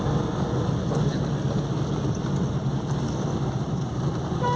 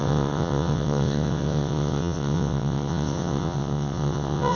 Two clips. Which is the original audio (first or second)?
first